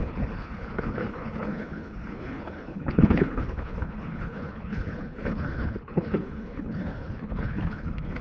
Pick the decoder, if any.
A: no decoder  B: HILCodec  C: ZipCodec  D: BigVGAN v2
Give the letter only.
B